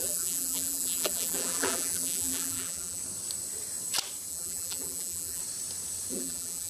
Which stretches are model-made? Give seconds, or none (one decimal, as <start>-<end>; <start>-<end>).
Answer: 0.0-3.0; 4.3-5.4; 6.1-6.7